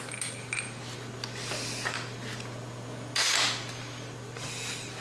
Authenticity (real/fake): real